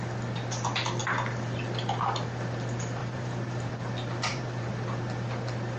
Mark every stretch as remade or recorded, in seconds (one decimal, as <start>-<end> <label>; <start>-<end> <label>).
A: 0.0-3.0 recorded; 3.0-3.7 remade; 3.7-4.3 recorded; 4.3-4.8 remade; 4.8-5.8 recorded